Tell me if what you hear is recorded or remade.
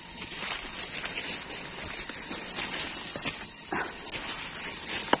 recorded